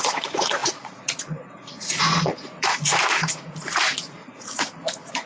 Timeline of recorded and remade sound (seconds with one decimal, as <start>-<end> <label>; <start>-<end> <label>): 0.0-5.3 remade